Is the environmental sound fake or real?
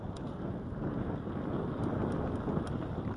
real